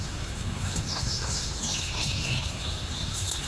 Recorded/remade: remade